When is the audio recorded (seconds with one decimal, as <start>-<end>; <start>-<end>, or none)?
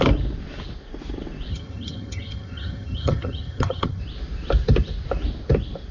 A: 0.0-1.5; 4.0-5.9